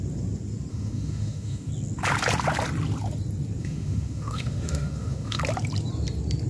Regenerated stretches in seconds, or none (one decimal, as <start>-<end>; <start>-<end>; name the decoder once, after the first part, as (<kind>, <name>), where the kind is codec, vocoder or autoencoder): 0.7-1.7 (autoencoder, DAC-VAE); 3.6-5.4